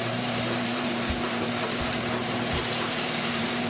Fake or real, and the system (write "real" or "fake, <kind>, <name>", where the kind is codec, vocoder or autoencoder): fake, vocoder, BigVGAN v2